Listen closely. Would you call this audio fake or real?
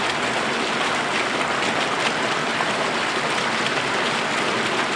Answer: real